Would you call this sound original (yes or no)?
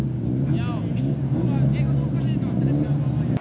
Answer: yes